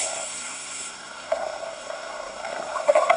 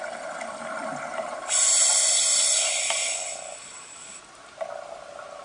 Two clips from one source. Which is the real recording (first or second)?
second